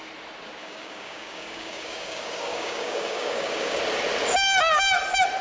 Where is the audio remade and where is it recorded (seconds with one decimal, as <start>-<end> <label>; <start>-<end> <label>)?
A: 0.0-0.6 recorded; 0.6-3.8 remade; 3.8-5.4 recorded